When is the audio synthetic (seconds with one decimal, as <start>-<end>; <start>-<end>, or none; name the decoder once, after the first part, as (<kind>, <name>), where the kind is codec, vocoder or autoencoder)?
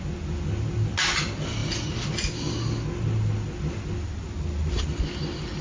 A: none